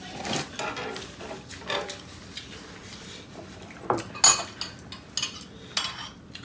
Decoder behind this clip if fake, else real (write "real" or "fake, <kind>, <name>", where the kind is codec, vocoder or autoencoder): real